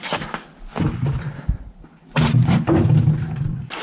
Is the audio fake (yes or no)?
no